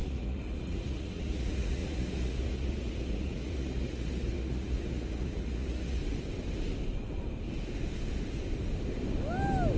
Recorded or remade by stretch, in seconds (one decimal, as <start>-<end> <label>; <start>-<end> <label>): 0.0-6.0 remade; 6.0-9.8 recorded